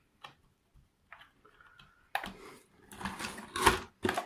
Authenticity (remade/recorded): recorded